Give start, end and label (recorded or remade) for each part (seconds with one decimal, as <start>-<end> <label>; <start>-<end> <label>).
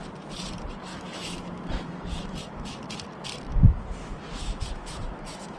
0.0-0.9 recorded; 0.9-2.8 remade; 2.8-3.5 recorded; 3.5-5.6 remade